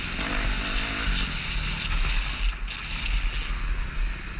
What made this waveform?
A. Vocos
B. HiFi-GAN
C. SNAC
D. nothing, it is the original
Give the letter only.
D